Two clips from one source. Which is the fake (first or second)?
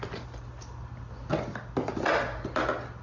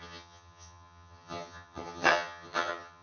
second